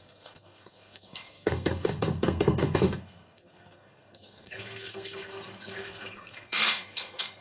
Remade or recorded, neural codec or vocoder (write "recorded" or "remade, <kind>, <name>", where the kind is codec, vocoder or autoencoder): remade, codec, SNAC